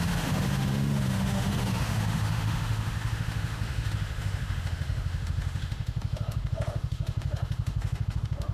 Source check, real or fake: fake